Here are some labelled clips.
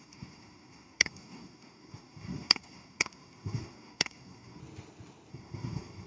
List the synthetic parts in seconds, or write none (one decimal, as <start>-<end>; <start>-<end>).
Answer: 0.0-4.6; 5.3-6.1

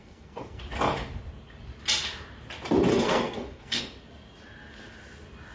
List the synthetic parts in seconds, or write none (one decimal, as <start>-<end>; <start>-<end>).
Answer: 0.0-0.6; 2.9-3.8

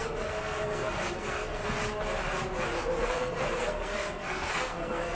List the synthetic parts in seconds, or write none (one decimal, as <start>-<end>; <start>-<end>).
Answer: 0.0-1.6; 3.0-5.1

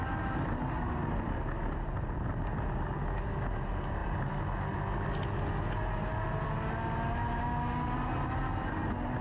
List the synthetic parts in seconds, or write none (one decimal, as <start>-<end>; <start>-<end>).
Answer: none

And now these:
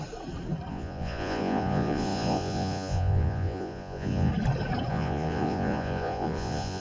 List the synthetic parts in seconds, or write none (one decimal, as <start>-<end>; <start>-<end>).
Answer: 0.7-4.3; 4.9-6.8

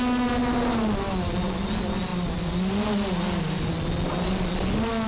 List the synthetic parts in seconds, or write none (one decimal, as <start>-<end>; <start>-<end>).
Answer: none

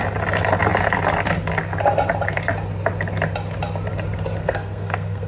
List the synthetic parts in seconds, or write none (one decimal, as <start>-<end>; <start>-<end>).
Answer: 4.4-5.3

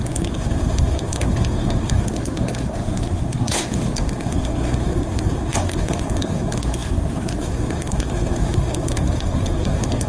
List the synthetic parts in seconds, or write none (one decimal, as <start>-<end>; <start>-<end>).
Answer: 0.0-10.1